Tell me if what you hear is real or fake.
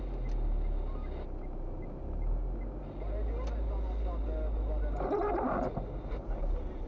real